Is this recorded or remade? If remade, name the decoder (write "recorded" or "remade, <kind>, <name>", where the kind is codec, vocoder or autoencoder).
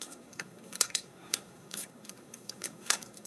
remade, codec, SNAC